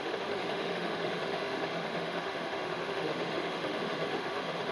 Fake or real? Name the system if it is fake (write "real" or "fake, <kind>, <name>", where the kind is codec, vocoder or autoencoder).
fake, autoencoder, DAC-VAE